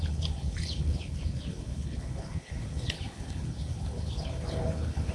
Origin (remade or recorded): remade